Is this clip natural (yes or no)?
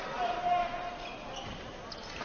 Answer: yes